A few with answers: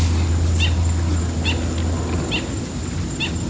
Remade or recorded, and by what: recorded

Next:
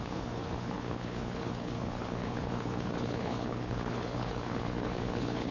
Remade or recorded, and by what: remade, codec, HILCodec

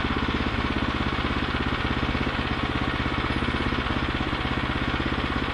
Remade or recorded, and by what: recorded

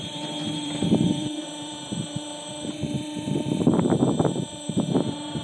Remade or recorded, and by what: remade, vocoder, BigVGAN v2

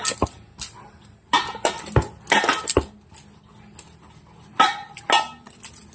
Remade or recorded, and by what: recorded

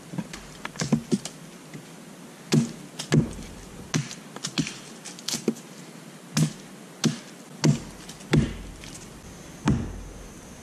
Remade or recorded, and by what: recorded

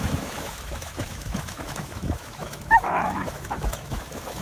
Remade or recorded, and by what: remade, autoencoder, DAC-VAE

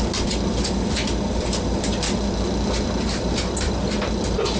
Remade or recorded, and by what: recorded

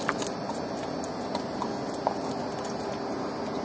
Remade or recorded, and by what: recorded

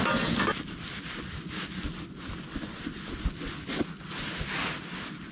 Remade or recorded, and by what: recorded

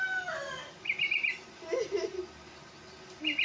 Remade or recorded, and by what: recorded